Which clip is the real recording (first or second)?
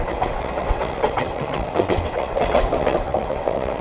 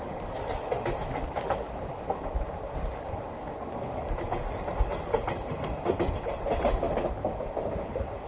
second